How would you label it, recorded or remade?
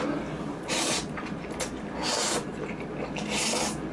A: recorded